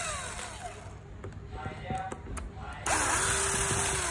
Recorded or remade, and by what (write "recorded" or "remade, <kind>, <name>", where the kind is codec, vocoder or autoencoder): recorded